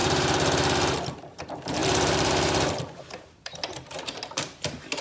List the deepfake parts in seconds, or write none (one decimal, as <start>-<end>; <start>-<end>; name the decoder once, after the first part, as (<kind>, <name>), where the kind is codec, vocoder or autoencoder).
0.0-5.0 (vocoder, BigVGAN v2)